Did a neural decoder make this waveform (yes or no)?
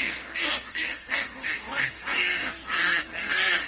yes